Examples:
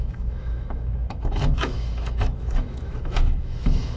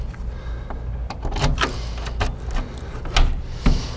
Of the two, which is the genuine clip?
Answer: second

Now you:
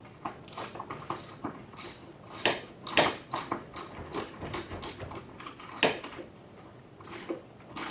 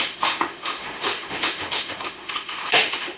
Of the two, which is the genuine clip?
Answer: first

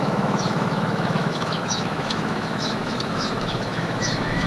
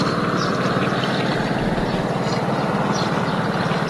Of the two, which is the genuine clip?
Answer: second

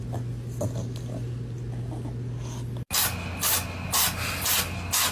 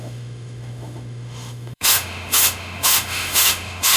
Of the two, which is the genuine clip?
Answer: first